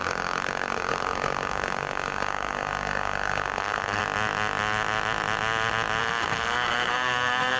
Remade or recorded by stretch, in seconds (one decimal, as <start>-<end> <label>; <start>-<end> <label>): 0.0-4.0 remade; 4.0-6.0 recorded; 6.0-7.6 remade